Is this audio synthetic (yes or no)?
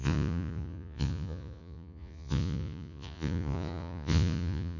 yes